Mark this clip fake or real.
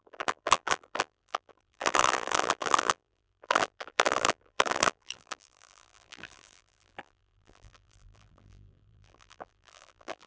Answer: fake